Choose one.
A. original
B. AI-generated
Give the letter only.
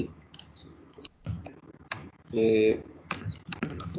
B